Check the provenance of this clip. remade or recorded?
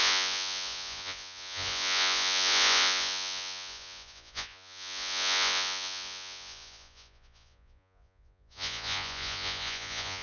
remade